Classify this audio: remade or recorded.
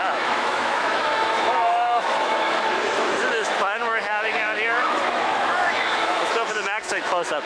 remade